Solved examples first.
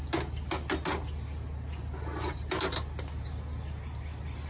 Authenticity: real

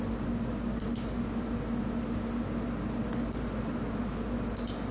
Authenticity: real